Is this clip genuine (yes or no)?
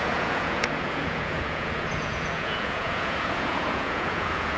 no